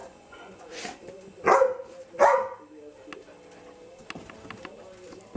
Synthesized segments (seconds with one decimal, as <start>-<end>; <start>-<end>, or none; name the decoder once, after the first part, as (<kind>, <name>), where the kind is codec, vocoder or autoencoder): 0.0-0.8 (vocoder, Vocos)